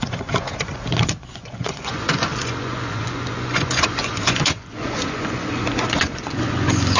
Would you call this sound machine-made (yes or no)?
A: yes